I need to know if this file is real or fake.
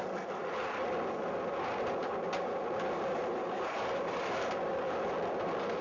real